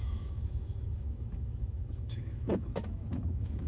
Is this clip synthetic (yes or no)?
yes